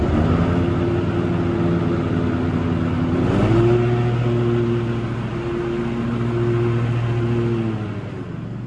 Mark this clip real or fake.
real